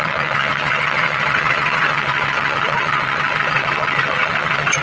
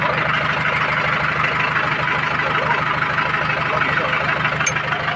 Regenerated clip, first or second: first